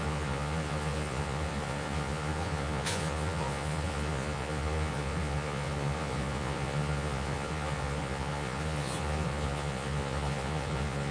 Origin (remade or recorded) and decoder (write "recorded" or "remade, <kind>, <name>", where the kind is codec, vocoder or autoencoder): remade, vocoder, Vocos